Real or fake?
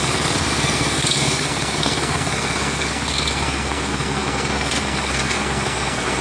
fake